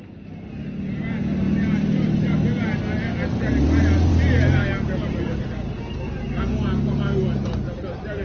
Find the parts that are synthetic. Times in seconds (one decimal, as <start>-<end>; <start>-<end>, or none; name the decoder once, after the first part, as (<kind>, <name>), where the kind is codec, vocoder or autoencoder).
none